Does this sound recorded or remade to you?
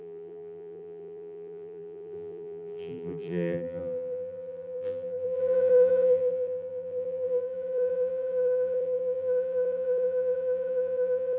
remade